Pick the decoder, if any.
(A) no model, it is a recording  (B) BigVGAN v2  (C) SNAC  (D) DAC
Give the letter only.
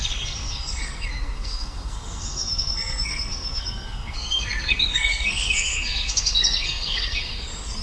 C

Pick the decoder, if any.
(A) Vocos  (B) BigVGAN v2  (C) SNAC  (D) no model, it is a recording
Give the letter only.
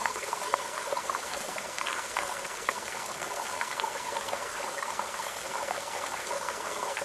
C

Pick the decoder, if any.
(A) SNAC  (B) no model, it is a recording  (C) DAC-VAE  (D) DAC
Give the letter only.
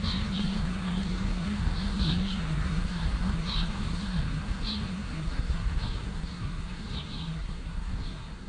A